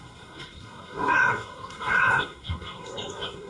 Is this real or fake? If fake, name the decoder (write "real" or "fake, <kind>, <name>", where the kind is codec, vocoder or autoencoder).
fake, codec, SNAC